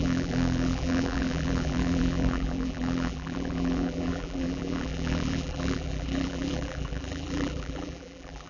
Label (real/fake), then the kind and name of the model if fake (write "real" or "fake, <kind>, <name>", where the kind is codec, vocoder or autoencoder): fake, vocoder, BigVGAN v2